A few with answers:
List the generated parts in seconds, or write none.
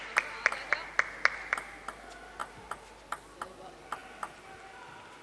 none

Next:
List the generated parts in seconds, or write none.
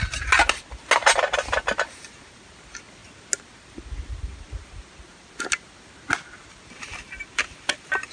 none